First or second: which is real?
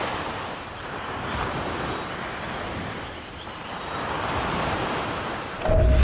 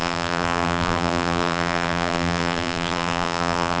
first